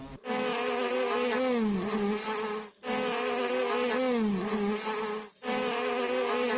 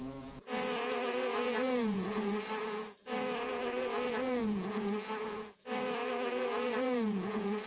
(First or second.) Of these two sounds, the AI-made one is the second